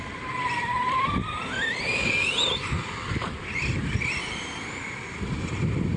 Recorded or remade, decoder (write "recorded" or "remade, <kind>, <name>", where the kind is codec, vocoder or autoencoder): remade, vocoder, BigVGAN v2